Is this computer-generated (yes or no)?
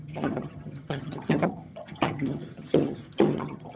yes